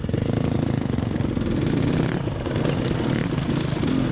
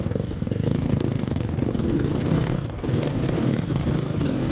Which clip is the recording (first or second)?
first